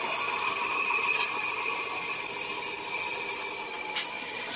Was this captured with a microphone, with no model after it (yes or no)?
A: yes